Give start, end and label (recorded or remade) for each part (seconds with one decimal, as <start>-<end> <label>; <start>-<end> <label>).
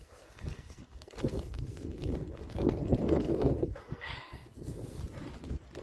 0.0-5.0 remade; 5.0-5.8 recorded